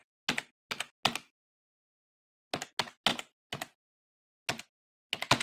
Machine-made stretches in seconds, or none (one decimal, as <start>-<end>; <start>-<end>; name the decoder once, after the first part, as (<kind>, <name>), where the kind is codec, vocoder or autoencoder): none